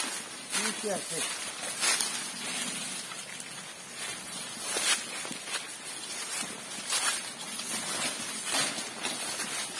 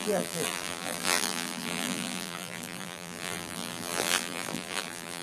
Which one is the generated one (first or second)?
second